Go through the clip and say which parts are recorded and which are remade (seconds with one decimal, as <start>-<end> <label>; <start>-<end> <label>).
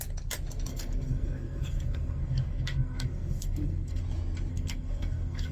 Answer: 0.0-0.7 recorded; 0.7-4.0 remade; 4.0-4.5 recorded; 4.5-5.5 remade